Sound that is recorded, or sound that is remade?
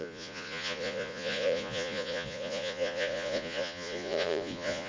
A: remade